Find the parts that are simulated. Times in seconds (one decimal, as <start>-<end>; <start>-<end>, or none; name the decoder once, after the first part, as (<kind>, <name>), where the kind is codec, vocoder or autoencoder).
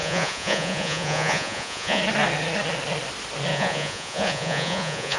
0.0-2.0 (vocoder, Vocos); 3.5-5.2